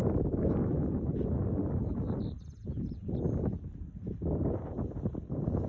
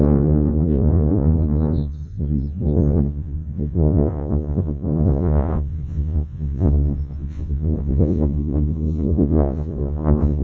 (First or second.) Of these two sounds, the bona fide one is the first